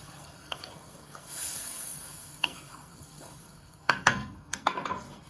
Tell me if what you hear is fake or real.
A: fake